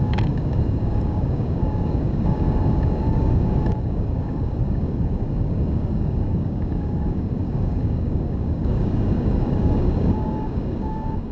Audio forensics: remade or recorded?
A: remade